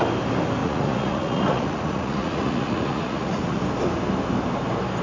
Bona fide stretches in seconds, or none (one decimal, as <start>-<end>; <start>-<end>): 0.0-0.6; 3.6-5.0